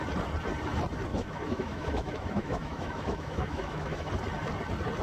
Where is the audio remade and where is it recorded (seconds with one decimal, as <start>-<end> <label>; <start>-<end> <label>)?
0.0-1.1 recorded; 1.1-4.1 remade; 4.1-5.0 recorded